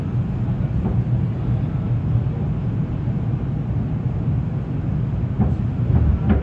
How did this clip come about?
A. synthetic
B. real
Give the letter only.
B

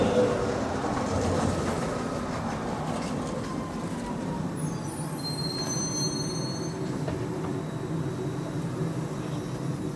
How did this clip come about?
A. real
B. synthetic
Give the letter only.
A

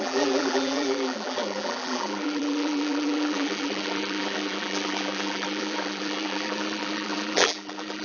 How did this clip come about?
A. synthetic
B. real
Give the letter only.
A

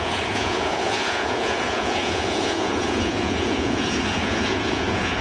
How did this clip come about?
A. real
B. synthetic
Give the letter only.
B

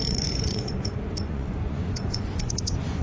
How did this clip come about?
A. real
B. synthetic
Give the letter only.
B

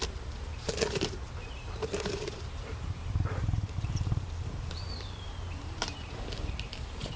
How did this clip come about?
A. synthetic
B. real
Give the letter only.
A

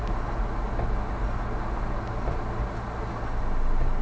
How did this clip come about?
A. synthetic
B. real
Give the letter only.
B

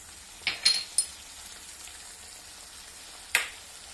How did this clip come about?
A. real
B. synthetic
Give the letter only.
A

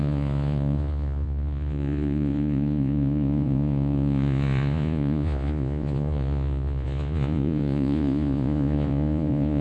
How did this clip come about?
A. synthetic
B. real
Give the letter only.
A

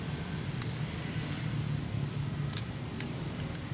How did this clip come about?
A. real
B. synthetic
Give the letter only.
A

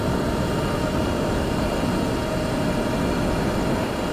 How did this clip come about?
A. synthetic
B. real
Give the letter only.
B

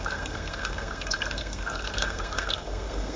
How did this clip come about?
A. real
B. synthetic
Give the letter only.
B